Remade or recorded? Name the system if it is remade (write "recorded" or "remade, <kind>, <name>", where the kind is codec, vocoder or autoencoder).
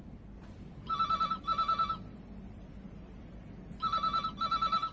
remade, vocoder, BigVGAN v2